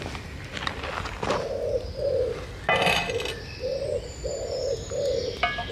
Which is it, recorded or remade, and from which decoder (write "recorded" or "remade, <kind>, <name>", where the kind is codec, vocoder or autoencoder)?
recorded